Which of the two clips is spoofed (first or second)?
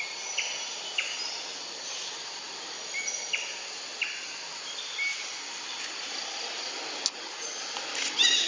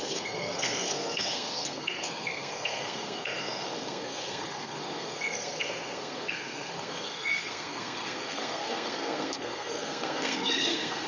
second